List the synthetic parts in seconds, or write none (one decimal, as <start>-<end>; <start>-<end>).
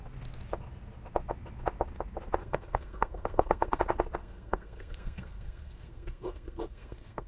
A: 2.4-3.8; 4.2-7.3